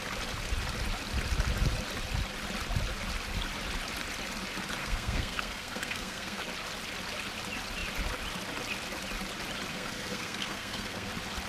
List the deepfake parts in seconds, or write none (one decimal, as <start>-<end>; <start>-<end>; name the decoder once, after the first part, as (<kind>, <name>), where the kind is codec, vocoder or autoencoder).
4.8-6.4 (codec, SNAC); 9.7-11.1